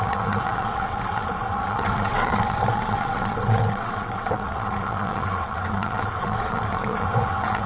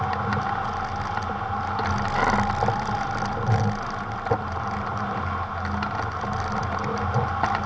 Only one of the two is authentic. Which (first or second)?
second